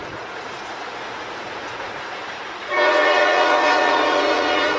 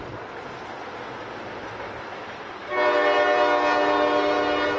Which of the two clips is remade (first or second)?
first